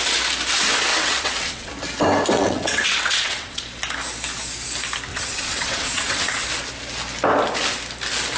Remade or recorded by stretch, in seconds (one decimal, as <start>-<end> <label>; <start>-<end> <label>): 0.0-0.9 recorded; 0.9-1.7 remade; 1.7-2.3 recorded; 2.3-3.6 remade; 3.6-5.1 recorded; 5.1-6.5 remade; 6.5-8.4 recorded